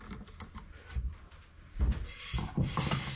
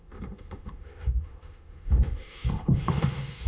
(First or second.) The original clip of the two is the first